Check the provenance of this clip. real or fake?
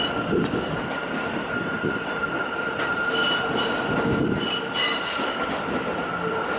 real